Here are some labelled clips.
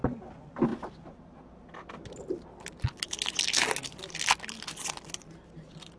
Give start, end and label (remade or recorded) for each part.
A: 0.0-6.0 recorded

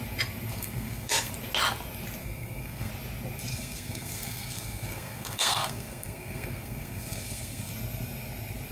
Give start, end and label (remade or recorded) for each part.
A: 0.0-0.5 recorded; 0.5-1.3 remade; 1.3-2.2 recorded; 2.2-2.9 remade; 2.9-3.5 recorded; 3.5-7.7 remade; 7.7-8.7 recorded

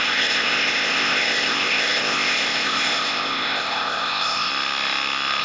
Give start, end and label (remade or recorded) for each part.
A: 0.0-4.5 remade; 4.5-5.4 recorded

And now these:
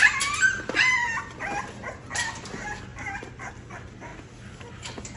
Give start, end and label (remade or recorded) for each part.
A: 0.0-5.2 recorded

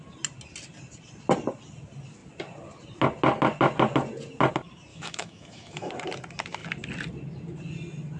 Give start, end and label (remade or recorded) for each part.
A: 0.0-4.9 recorded; 4.9-5.9 remade; 5.9-8.2 recorded